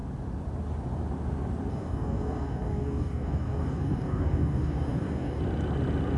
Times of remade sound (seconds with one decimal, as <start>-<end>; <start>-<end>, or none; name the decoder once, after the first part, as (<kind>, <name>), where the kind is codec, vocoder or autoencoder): 1.7-5.4 (codec, DAC)

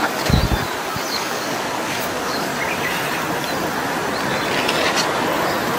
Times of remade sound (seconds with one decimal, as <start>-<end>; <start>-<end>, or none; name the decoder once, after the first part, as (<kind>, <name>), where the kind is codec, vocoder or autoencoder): 0.0-0.4 (codec, DAC); 1.1-2.5